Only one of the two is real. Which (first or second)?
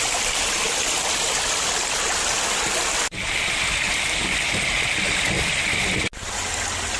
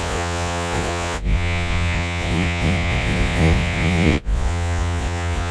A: first